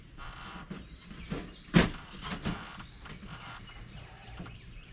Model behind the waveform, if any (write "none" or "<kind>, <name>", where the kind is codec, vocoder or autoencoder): none